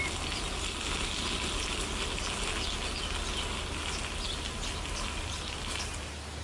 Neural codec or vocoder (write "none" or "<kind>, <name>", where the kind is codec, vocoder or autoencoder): none